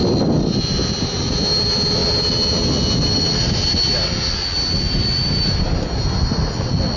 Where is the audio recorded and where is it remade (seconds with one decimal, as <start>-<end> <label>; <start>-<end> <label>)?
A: 0.0-7.0 recorded